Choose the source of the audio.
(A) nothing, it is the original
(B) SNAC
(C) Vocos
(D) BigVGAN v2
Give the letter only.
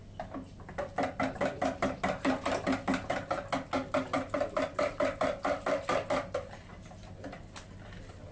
A